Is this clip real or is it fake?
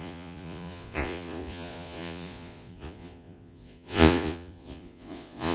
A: fake